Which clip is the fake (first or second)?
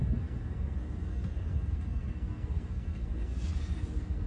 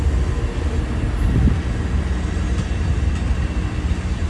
first